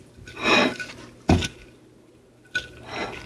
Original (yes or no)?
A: yes